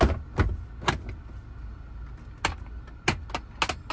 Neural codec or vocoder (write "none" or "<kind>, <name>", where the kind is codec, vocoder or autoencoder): none